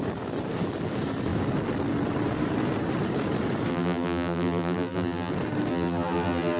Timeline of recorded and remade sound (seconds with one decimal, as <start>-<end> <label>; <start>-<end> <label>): 0.0-3.7 recorded; 3.7-5.3 remade; 5.3-5.7 recorded; 5.7-6.6 remade